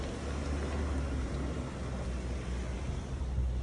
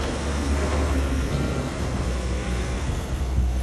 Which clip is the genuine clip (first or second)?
first